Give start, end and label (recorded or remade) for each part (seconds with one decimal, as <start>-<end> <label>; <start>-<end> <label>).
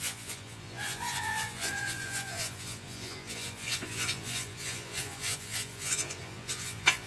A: 0.0-7.1 remade